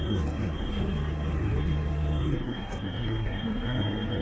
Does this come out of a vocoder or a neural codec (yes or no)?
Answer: yes